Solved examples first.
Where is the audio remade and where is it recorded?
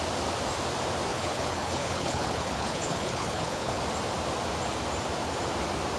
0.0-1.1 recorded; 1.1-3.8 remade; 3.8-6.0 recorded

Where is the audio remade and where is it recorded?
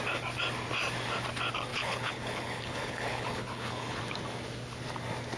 0.0-1.7 recorded; 1.7-4.0 remade; 4.0-5.4 recorded